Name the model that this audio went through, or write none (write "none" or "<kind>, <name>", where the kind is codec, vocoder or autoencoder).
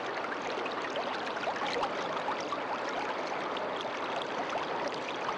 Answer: none